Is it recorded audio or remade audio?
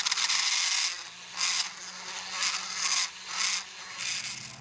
recorded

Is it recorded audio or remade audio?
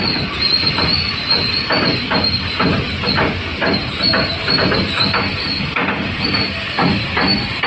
recorded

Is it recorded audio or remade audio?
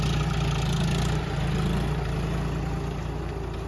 recorded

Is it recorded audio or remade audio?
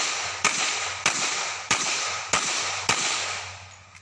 recorded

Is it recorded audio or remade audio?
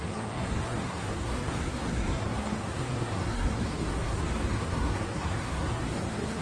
remade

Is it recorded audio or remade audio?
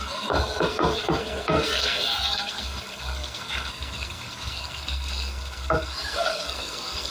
remade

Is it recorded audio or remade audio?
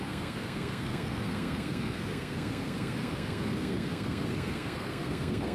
remade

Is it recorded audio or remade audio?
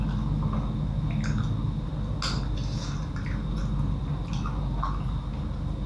recorded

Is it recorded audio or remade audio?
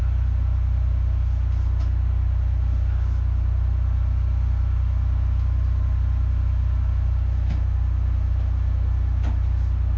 recorded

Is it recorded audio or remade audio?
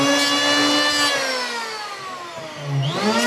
recorded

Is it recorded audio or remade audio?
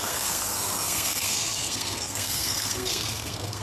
remade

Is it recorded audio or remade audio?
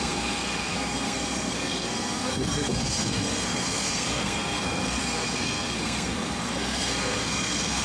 remade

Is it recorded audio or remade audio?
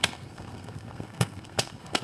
remade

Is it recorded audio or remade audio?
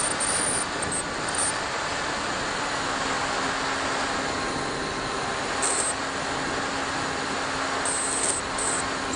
recorded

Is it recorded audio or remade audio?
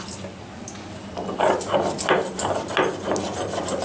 recorded